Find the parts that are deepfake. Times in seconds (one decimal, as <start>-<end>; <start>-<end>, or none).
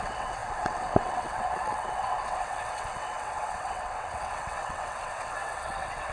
0.0-6.1